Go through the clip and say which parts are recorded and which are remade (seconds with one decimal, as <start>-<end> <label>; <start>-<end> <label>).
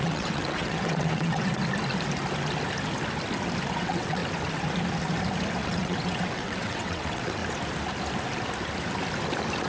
0.0-1.5 remade; 1.5-3.8 recorded; 3.8-4.2 remade; 4.2-5.6 recorded; 5.6-7.4 remade; 7.4-9.7 recorded